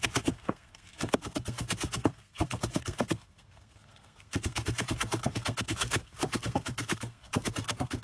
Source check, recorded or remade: remade